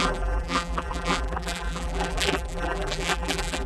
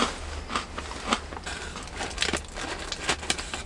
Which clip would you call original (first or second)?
second